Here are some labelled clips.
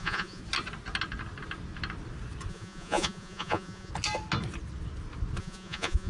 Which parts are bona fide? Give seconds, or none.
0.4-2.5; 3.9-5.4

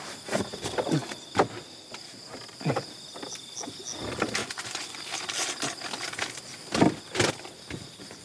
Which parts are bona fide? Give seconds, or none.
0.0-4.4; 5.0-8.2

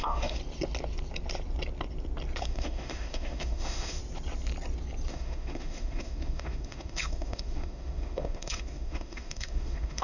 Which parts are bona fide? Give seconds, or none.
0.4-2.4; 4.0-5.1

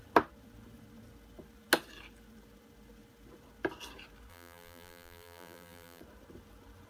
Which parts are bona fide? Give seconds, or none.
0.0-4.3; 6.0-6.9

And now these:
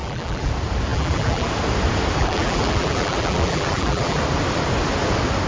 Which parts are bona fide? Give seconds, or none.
0.5-0.9; 1.5-2.2; 4.2-5.5

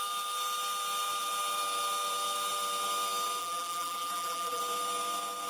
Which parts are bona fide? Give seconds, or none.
0.0-3.4; 4.6-5.5

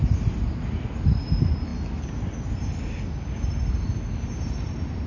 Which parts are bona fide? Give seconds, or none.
0.0-5.1